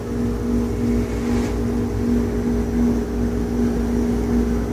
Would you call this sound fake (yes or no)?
no